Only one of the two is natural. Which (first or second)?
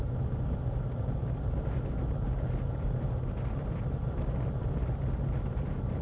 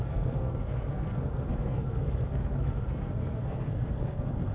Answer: first